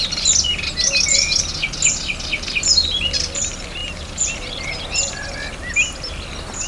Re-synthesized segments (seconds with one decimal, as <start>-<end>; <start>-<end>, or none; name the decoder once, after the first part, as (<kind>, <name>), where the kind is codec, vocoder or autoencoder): 3.8-4.3 (vocoder, BigVGAN v2)